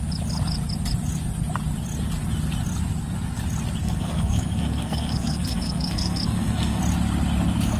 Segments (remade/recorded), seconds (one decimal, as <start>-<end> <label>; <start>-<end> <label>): 0.0-3.8 recorded; 3.8-6.8 remade; 6.8-7.8 recorded